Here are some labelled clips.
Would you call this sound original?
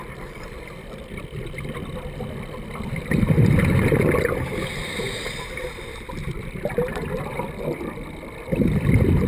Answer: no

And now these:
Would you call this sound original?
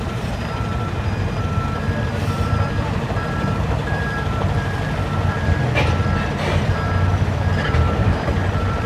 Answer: no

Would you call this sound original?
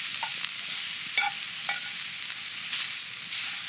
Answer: yes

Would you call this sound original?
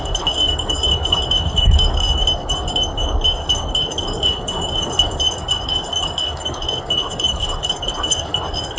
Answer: no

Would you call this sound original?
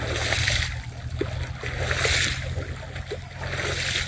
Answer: yes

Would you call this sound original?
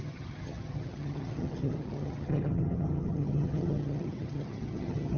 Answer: no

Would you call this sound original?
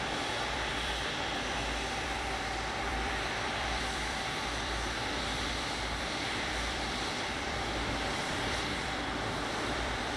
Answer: no